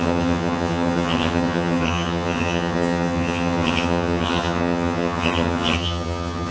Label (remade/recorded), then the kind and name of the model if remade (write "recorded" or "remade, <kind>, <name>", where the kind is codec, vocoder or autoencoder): remade, vocoder, HiFi-GAN